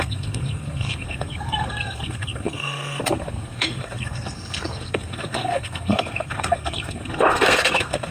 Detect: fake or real fake